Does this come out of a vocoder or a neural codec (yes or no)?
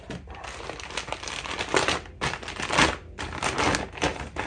no